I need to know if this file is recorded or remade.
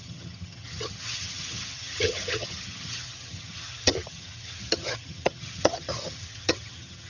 remade